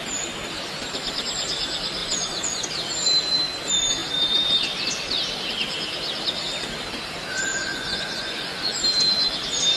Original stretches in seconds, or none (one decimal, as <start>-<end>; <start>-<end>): 0.0-2.0; 2.7-7.5; 8.8-9.8